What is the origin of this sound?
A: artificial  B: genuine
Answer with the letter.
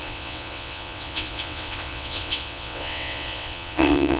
A